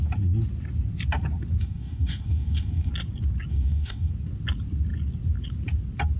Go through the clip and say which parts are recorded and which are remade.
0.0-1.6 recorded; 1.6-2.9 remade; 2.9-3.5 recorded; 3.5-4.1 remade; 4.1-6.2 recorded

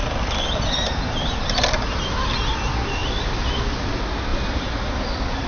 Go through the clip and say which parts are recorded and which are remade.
0.0-0.7 remade; 0.7-3.0 recorded; 3.0-3.9 remade; 3.9-4.3 recorded; 4.3-5.1 remade; 5.1-5.5 recorded

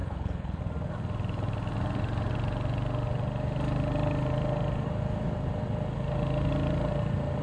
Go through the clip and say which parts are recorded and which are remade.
0.0-0.6 remade; 0.6-7.4 recorded

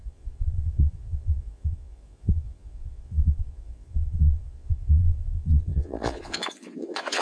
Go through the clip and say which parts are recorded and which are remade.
0.0-7.2 remade

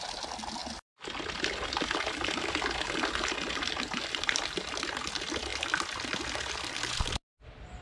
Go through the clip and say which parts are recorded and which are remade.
0.0-5.5 recorded; 5.5-6.2 remade; 6.2-7.8 recorded

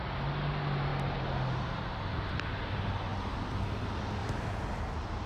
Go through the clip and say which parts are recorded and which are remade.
0.0-4.2 recorded; 4.2-4.8 remade; 4.8-5.3 recorded

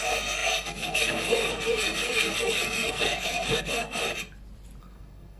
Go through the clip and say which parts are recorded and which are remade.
0.0-4.0 remade; 4.0-4.8 recorded; 4.8-5.4 remade